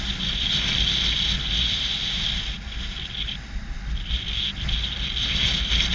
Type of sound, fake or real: real